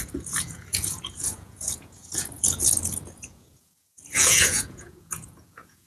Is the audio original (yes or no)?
no